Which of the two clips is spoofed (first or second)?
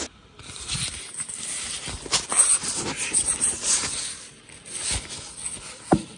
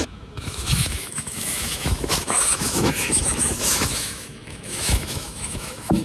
second